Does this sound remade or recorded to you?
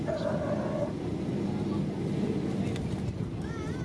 recorded